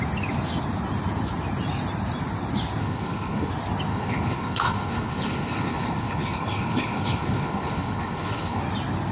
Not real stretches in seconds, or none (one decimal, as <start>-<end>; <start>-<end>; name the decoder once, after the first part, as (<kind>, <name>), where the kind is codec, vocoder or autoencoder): 2.8-3.5 (codec, HILCodec); 3.9-8.6